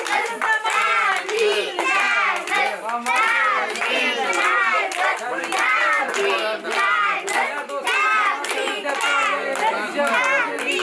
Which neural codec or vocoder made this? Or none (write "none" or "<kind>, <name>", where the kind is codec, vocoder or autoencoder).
none